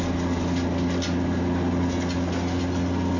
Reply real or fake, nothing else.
real